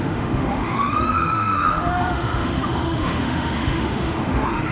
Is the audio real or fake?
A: fake